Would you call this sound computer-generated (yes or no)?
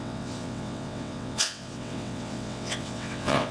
yes